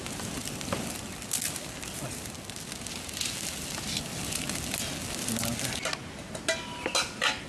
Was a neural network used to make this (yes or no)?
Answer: no